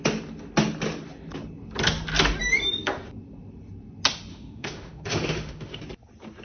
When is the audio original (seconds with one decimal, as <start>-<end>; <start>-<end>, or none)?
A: 0.0-4.3; 5.8-6.4

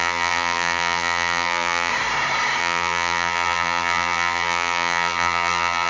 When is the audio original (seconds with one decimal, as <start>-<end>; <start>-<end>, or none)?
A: 1.9-2.6

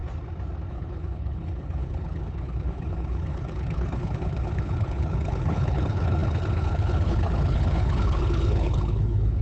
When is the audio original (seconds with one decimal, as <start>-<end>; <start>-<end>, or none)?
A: 0.0-0.7

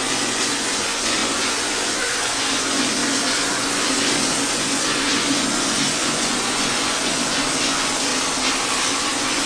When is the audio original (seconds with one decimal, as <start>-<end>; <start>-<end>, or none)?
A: 8.1-9.0

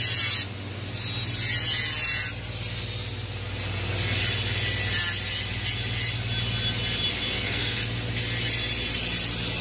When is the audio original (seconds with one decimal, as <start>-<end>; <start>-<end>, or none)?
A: 0.0-7.3; 7.8-9.6

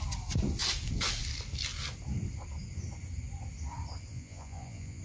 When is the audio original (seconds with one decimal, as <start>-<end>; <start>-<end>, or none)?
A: 0.0-4.1

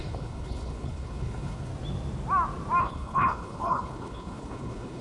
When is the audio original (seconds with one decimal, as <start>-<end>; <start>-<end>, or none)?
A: 1.7-2.8

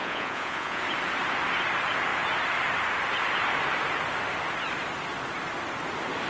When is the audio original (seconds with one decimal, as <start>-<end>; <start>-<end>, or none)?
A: 0.8-6.3